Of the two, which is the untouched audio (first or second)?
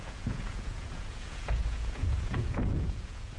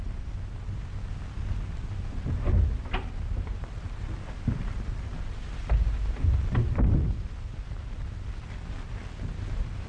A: second